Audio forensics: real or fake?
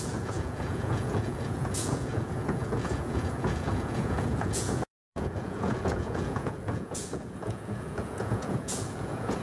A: fake